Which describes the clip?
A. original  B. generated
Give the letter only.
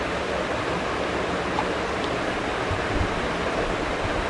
A